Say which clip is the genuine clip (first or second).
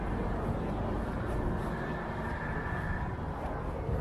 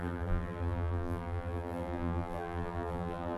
first